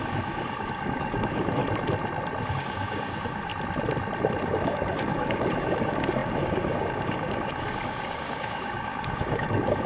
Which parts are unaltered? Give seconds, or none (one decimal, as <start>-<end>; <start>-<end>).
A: 1.6-2.5; 3.5-4.4